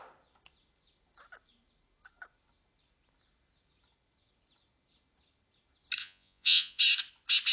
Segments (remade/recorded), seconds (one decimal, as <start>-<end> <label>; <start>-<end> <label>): 0.0-6.0 recorded; 6.0-6.8 remade; 6.8-7.5 recorded